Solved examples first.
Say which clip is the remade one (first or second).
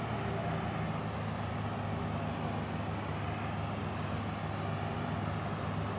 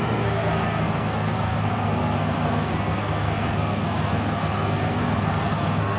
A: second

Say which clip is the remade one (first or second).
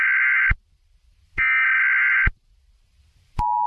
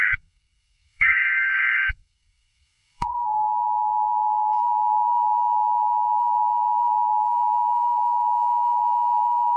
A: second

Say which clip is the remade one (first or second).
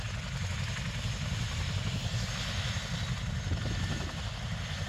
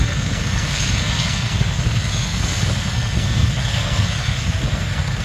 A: second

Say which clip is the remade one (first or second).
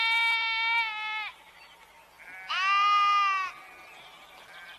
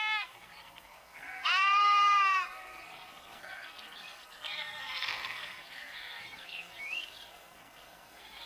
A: second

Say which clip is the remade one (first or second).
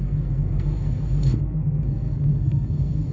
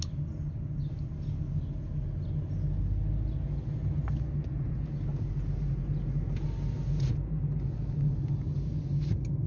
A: first